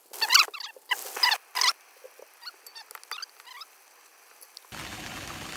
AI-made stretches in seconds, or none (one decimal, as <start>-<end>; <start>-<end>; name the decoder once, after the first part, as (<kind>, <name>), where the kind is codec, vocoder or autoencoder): none